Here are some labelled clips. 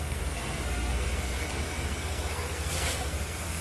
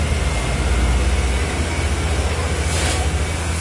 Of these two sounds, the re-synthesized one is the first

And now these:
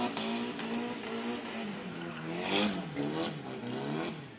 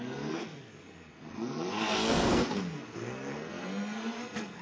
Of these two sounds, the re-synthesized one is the second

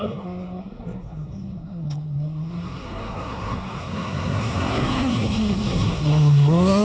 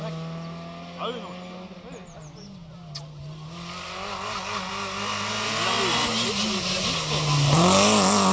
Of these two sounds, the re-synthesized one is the first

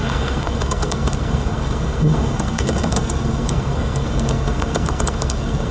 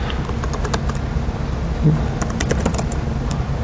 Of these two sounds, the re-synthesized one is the first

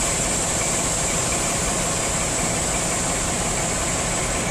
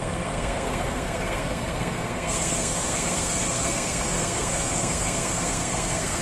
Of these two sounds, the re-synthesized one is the second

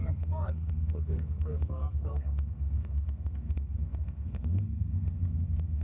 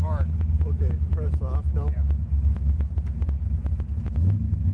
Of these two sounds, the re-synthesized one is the first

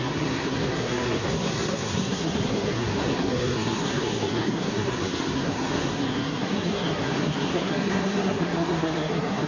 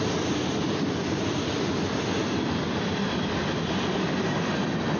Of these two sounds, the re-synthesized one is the first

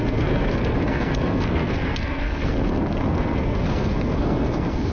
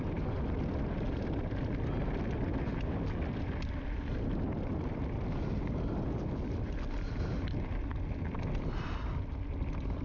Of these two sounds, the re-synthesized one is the first